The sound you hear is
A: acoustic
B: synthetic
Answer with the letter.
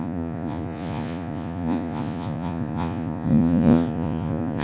B